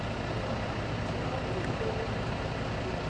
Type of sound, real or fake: real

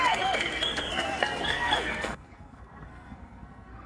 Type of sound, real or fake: fake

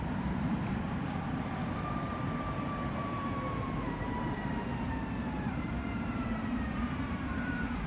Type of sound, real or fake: fake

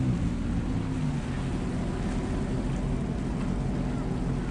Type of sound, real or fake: real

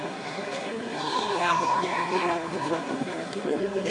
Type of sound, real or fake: fake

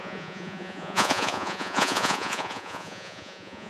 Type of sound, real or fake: fake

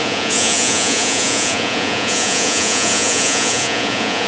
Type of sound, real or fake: fake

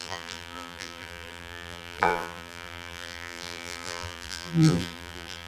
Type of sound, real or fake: fake